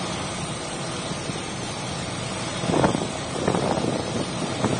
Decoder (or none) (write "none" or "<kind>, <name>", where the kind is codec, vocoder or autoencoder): none